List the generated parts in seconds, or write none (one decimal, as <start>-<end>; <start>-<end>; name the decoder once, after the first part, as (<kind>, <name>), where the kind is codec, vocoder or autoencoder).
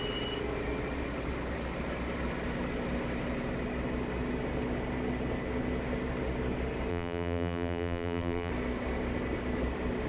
6.9-8.5 (vocoder, BigVGAN v2)